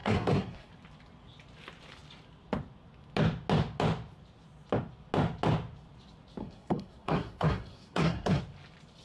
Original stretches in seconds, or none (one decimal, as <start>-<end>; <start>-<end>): 0.7-6.4; 8.4-9.0